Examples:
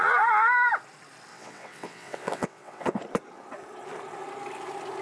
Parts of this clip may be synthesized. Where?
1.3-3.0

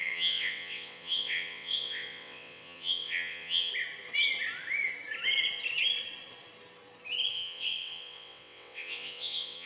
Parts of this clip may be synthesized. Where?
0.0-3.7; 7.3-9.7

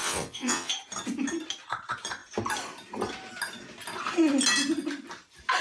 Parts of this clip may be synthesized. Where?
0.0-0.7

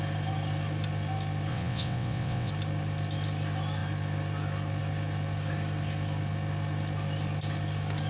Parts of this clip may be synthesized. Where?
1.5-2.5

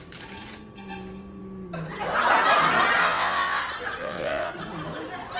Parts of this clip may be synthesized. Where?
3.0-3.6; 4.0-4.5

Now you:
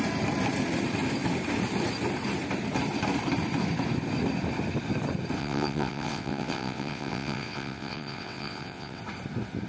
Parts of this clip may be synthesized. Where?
5.4-9.0

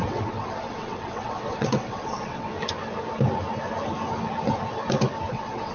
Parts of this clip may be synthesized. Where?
0.0-2.5; 5.3-5.7

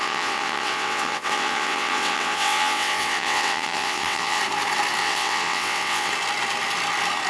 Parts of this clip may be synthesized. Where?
0.0-4.4; 5.0-6.1